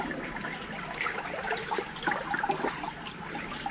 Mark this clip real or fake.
real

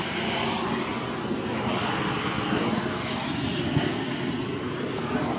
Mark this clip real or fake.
real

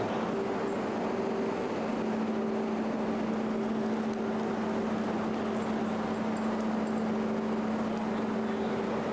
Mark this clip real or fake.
real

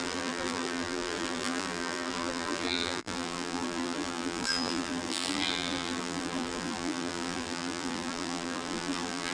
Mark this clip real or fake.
fake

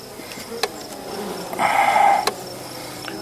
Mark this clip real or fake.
real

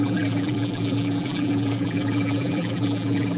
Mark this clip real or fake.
fake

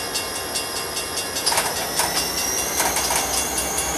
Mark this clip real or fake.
real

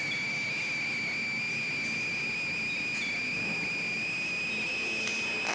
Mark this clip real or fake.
real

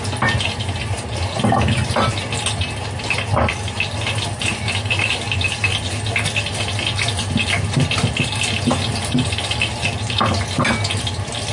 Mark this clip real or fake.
real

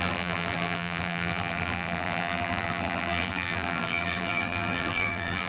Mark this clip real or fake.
fake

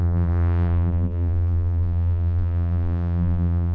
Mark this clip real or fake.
fake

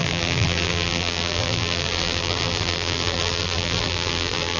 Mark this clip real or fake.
fake